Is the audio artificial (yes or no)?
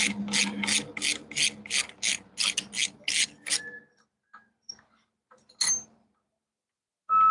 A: no